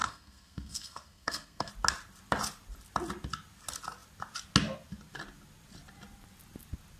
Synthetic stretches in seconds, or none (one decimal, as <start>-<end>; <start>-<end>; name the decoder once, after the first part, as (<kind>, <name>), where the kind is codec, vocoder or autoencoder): 0.0-1.7 (codec, SNAC)